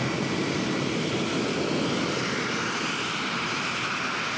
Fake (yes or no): no